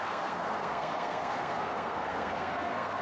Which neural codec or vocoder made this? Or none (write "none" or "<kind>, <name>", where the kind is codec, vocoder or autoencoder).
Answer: codec, SNAC